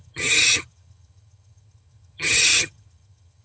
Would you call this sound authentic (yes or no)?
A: no